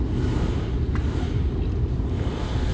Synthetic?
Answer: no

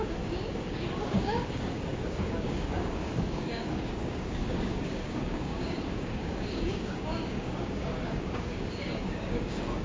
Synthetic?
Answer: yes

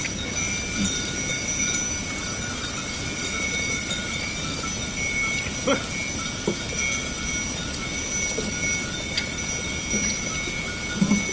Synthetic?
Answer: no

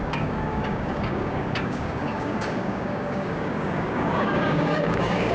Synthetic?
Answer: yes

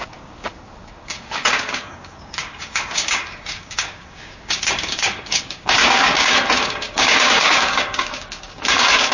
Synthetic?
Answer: yes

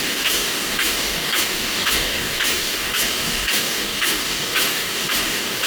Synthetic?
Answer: yes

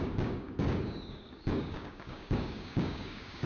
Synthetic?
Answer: yes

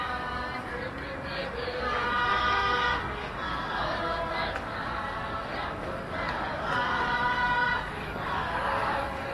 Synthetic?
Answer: yes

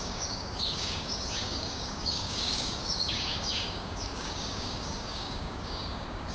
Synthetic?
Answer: yes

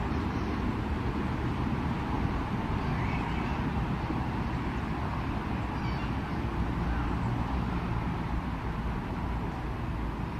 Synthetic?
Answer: no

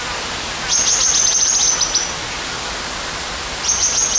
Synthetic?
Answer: no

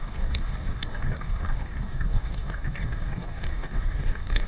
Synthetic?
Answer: yes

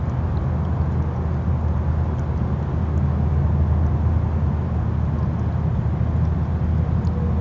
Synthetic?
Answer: no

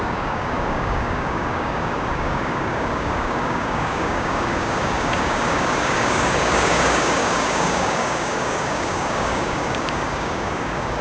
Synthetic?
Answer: yes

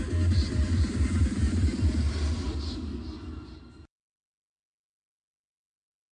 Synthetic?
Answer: no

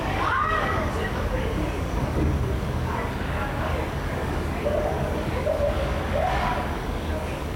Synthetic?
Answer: yes